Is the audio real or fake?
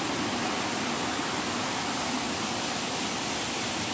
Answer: real